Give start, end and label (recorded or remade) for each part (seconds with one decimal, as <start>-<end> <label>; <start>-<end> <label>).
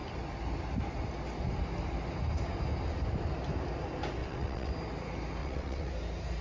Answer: 0.0-4.2 recorded; 4.2-4.7 remade; 4.7-5.4 recorded; 5.4-5.9 remade; 5.9-6.4 recorded